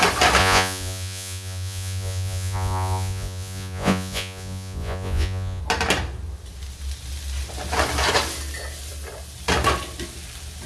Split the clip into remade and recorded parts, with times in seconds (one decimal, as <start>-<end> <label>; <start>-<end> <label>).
0.0-0.4 recorded; 0.4-5.6 remade; 5.6-10.7 recorded